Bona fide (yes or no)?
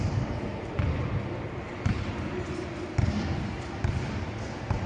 yes